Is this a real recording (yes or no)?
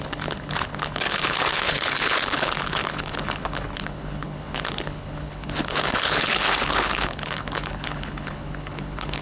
no